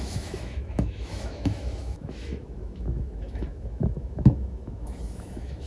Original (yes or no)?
no